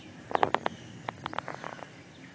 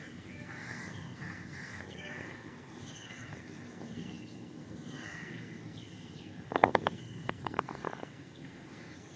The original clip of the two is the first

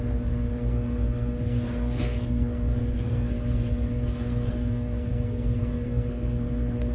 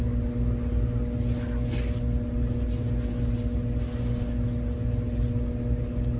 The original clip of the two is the second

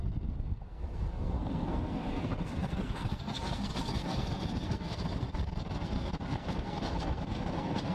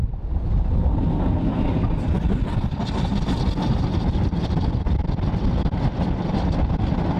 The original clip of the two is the second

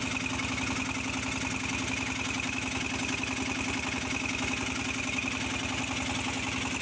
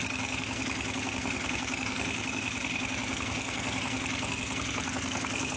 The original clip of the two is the first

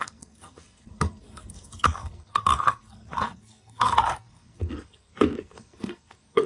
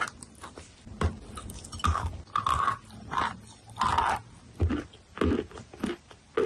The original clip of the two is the second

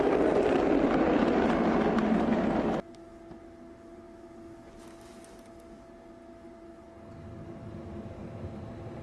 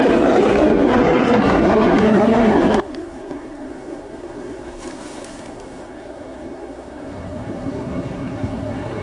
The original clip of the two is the first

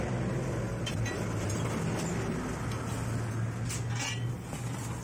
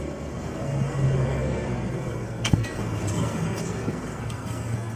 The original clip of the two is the first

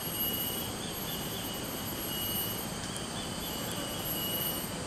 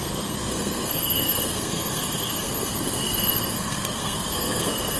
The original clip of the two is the first